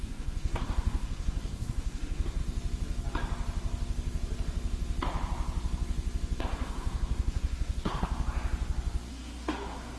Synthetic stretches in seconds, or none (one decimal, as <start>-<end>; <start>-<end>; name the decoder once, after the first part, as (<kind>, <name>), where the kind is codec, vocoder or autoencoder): 0.0-2.4 (codec, SNAC); 6.4-8.1; 9.1-10.0